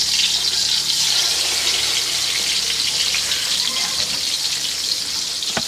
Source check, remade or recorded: recorded